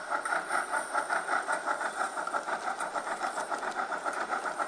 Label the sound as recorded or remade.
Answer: recorded